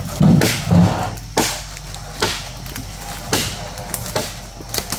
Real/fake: real